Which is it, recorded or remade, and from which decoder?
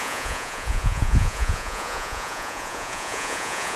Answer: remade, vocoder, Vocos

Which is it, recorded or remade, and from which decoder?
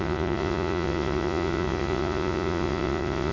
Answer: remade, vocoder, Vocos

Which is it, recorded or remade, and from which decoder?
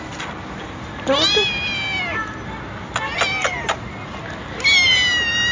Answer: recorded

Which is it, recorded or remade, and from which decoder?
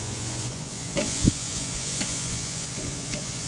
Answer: remade, vocoder, Vocos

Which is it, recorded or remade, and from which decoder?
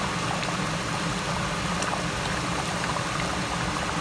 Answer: recorded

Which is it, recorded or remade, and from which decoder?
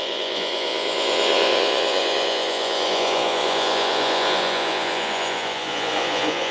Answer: remade, vocoder, Vocos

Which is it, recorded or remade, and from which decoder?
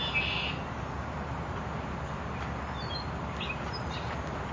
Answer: recorded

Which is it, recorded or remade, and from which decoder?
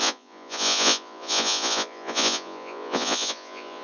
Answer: remade, vocoder, Vocos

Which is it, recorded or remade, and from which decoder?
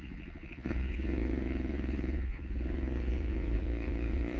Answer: remade, vocoder, Vocos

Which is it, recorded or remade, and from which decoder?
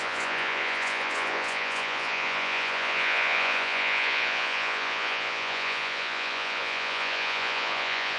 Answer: remade, vocoder, Vocos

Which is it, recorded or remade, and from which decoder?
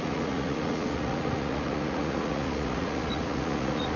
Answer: remade, vocoder, Vocos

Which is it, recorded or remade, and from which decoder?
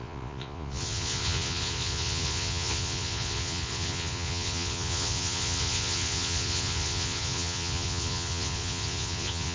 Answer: remade, vocoder, Vocos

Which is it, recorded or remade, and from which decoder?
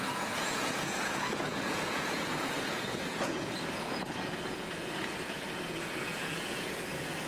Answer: remade, vocoder, Vocos